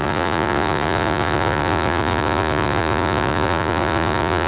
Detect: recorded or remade remade